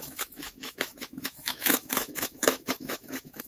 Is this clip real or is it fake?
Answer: fake